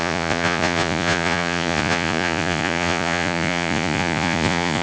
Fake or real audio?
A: fake